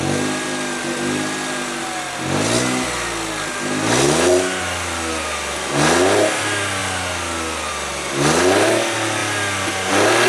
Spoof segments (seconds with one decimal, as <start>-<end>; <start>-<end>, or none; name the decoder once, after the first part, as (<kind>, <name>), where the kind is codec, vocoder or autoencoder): none